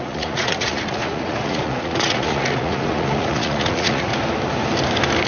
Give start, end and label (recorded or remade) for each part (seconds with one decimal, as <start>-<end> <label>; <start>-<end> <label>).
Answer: 0.0-4.1 remade; 4.1-5.3 recorded